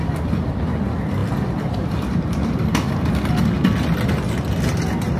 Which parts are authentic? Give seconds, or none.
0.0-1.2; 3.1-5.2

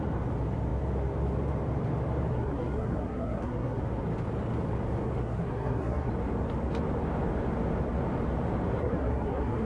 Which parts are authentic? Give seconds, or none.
0.0-2.3; 3.8-5.2; 6.1-8.8

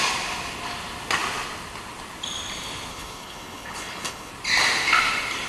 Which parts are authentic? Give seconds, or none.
0.0-2.9; 4.3-5.5

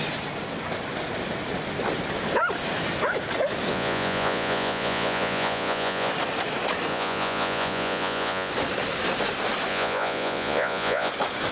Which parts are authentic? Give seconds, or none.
0.0-3.7; 6.1-6.9; 8.5-9.7; 11.1-11.5

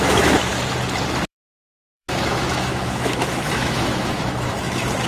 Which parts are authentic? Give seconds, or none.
0.5-1.3